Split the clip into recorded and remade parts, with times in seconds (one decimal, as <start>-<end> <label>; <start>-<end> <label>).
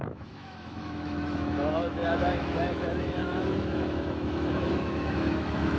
0.0-5.8 remade